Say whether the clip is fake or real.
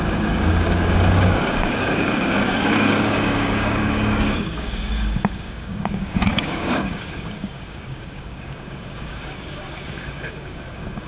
fake